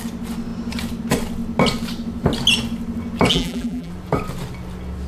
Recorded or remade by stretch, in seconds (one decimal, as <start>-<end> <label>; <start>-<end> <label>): 0.0-3.3 recorded; 3.3-3.9 remade; 3.9-5.1 recorded

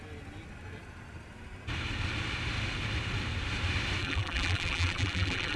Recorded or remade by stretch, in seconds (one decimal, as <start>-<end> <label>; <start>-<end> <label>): 0.0-4.0 recorded; 4.0-5.6 remade

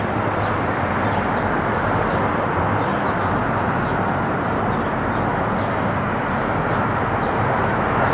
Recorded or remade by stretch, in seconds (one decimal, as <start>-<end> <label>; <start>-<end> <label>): 0.0-8.1 recorded

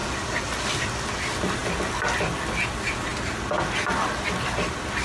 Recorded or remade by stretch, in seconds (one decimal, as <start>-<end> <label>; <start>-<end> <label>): 0.0-5.0 recorded

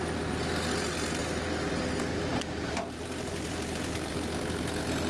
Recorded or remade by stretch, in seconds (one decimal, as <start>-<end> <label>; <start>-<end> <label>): 0.0-1.2 recorded; 1.2-1.8 remade; 1.8-2.3 recorded; 2.3-4.1 remade; 4.1-5.1 recorded

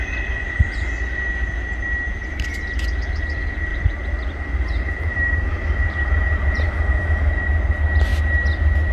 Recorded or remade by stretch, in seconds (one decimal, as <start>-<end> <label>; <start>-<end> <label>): 0.0-3.7 recorded; 3.7-7.4 remade; 7.4-8.9 recorded

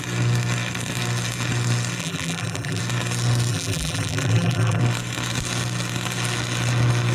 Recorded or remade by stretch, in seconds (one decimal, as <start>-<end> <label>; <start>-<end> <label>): 0.0-2.0 recorded; 2.0-2.8 remade; 2.8-3.5 recorded; 3.5-4.8 remade; 4.8-7.1 recorded